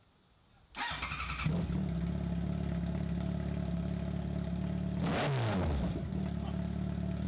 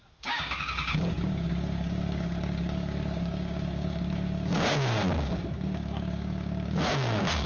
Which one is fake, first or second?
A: second